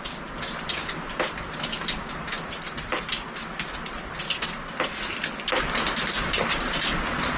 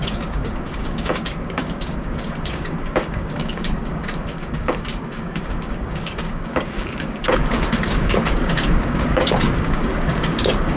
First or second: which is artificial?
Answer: second